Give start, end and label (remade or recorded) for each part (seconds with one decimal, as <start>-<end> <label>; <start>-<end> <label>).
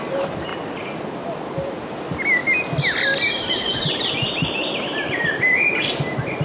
0.0-0.5 remade; 0.5-1.5 recorded; 1.5-2.4 remade; 2.4-3.3 recorded; 3.3-6.4 remade